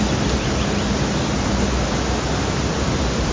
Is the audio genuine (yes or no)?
yes